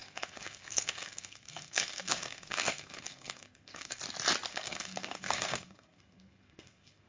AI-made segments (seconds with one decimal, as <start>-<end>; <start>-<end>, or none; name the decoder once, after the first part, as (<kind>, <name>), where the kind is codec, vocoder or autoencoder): 0.0-4.0 (codec, SNAC); 4.5-7.1